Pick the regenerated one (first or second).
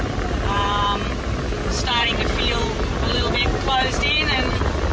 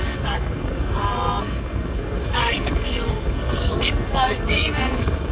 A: second